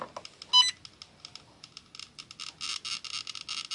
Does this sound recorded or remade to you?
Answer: recorded